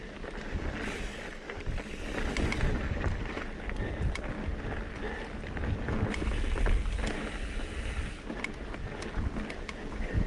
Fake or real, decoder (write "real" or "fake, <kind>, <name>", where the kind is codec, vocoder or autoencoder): real